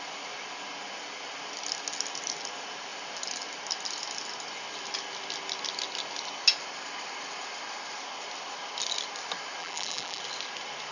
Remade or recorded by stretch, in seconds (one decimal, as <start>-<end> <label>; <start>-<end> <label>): 0.0-9.6 recorded; 9.6-10.2 remade; 10.2-10.9 recorded